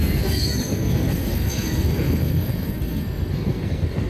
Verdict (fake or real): fake